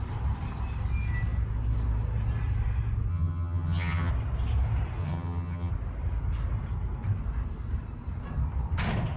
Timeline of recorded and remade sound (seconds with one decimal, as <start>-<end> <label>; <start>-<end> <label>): 0.0-3.1 recorded; 3.1-4.1 remade; 4.1-5.0 recorded; 5.0-5.7 remade; 5.7-9.2 recorded